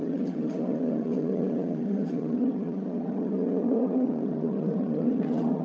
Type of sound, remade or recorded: remade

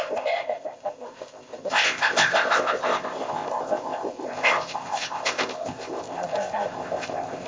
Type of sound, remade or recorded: remade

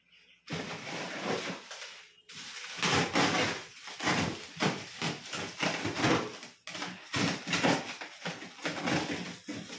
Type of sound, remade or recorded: recorded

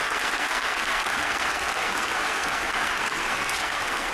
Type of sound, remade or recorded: remade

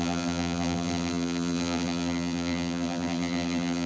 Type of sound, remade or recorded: remade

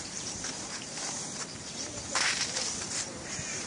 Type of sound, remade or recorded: remade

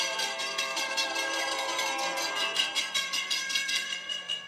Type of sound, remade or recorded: remade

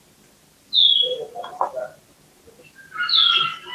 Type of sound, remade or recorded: recorded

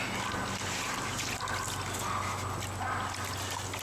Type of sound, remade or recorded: recorded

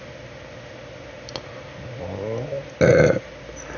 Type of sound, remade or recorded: recorded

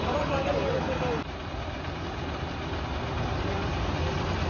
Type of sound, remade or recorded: recorded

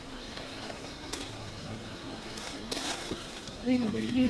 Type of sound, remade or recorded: remade